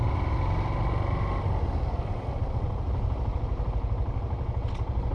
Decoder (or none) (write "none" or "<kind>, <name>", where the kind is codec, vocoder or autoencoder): none